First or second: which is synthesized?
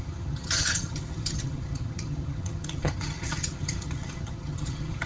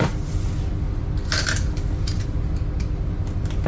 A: first